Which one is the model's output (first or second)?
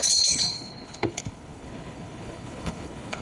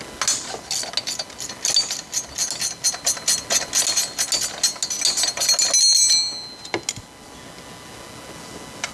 first